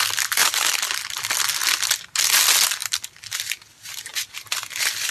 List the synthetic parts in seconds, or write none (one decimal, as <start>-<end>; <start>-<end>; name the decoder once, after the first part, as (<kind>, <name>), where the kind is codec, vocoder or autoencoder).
0.4-1.1 (vocoder, BigVGAN v2); 2.8-3.3